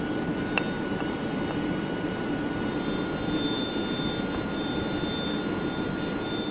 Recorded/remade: recorded